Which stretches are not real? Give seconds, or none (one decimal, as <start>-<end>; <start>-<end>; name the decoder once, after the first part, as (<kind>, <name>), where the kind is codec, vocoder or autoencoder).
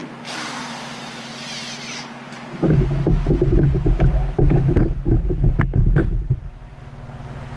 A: 0.0-4.6 (vocoder, BigVGAN v2); 6.0-6.8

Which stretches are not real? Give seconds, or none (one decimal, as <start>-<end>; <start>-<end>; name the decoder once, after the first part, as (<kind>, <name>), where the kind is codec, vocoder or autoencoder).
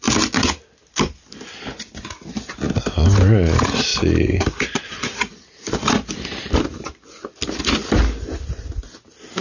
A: 3.9-7.3 (vocoder, BigVGAN v2)